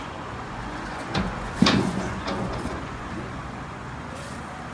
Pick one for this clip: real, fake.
fake